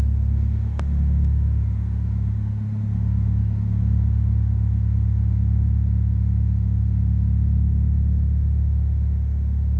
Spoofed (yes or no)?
yes